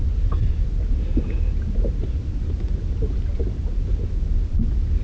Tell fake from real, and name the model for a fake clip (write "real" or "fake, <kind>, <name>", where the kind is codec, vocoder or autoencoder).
real